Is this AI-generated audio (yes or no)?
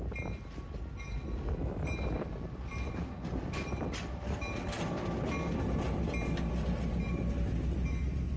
no